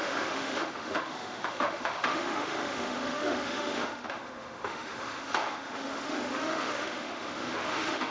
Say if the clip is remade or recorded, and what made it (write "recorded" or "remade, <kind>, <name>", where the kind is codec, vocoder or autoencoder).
remade, autoencoder, DAC-VAE